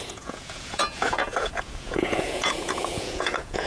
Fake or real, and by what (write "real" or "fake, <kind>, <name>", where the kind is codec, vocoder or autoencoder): fake, vocoder, Vocos